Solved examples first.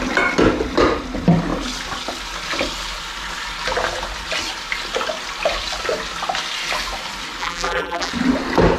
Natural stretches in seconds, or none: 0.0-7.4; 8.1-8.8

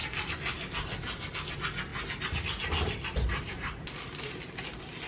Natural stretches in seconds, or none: 0.0-5.1

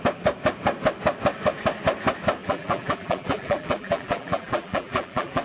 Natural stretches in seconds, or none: 0.0-2.4